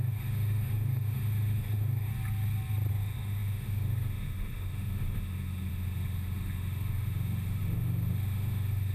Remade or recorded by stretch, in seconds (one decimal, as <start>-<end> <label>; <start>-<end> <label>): 0.0-2.1 remade; 2.1-2.9 recorded; 2.9-8.9 remade